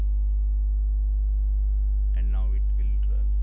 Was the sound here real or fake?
real